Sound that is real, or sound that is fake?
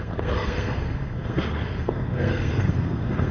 fake